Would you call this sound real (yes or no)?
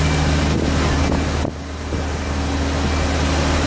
yes